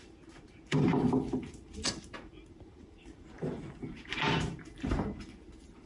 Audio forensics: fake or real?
fake